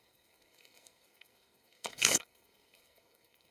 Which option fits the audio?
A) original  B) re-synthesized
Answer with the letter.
B